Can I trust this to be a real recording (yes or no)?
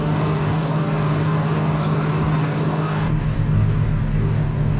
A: no